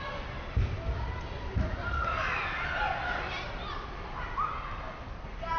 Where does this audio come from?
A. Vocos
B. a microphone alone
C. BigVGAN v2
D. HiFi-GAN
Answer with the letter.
B